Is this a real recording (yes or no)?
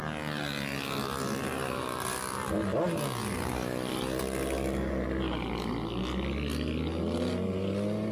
yes